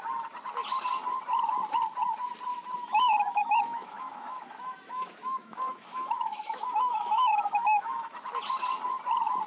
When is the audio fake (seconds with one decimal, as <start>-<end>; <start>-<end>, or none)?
2.5-3.0; 3.4-8.3